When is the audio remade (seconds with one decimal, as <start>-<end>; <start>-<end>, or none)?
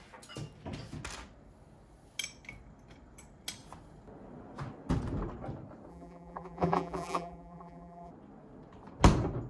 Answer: 5.9-8.1